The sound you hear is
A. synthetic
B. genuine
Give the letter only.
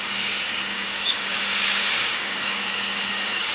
A